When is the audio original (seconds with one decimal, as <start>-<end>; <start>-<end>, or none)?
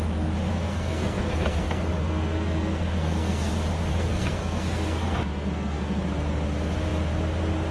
0.0-0.5; 3.5-3.9; 6.0-7.7